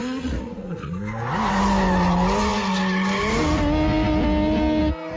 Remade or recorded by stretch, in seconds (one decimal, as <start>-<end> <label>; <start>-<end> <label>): 0.0-0.9 remade; 0.9-5.2 recorded